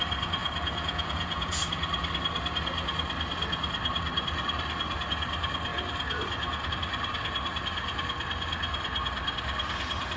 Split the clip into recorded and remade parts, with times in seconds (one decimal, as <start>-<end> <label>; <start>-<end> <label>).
0.0-0.4 recorded; 0.4-1.6 remade; 1.6-10.2 recorded